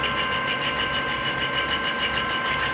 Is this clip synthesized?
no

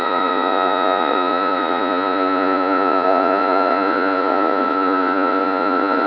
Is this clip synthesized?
yes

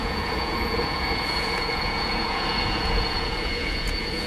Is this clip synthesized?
yes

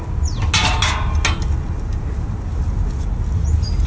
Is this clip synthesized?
no